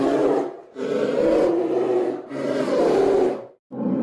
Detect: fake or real real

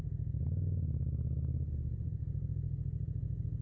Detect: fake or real real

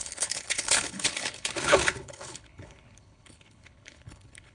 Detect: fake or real fake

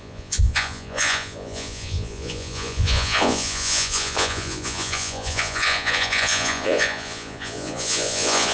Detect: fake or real fake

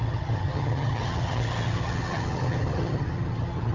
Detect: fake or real fake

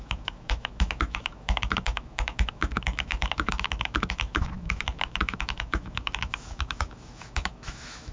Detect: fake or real fake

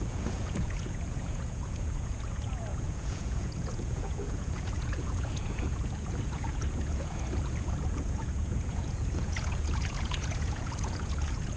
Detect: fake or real fake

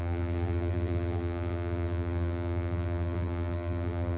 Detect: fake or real fake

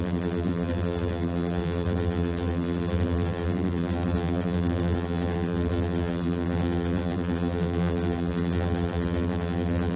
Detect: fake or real fake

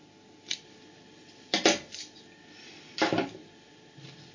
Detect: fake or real real